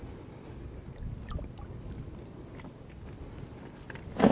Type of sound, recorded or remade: recorded